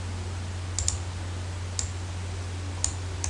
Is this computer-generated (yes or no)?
no